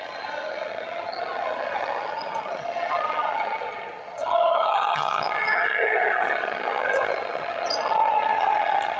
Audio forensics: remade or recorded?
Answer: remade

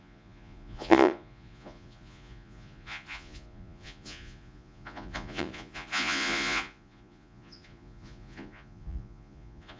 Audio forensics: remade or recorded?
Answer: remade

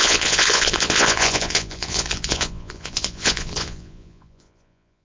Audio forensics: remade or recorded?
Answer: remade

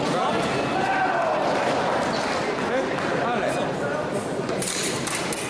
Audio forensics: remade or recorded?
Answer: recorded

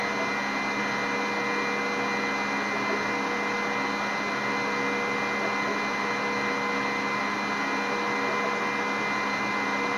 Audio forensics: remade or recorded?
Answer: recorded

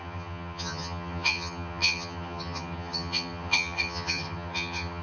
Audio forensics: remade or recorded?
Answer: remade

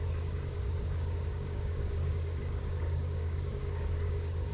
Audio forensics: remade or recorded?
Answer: remade